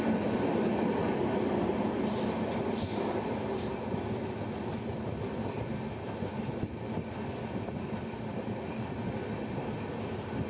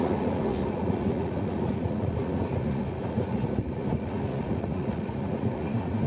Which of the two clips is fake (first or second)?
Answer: second